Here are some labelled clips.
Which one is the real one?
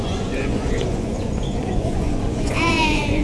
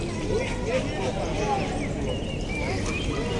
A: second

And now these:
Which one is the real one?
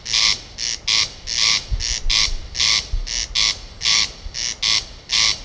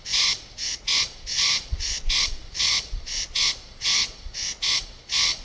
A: first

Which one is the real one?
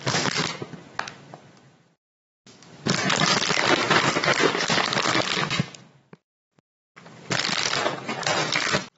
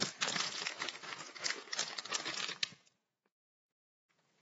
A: first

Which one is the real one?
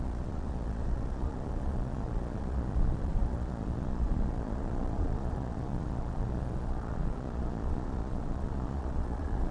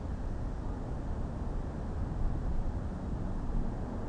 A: second